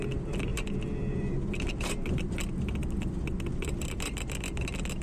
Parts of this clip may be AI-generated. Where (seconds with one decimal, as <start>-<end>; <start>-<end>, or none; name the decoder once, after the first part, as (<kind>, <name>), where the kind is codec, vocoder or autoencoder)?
none